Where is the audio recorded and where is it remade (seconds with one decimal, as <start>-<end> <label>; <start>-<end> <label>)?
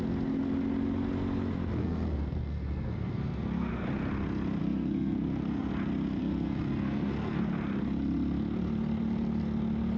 0.0-1.8 recorded; 1.8-3.7 remade; 3.7-4.6 recorded; 4.6-5.7 remade; 5.7-6.2 recorded; 6.2-7.4 remade; 7.4-10.0 recorded